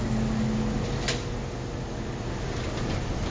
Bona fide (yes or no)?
yes